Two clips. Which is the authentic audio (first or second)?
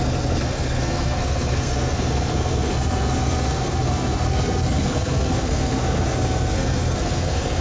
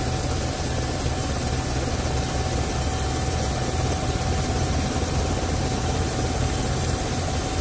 second